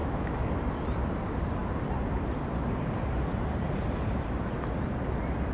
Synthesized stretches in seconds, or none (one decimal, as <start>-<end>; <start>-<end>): 0.0-0.5